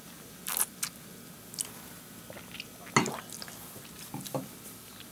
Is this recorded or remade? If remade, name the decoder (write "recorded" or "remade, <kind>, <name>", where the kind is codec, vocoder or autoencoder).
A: recorded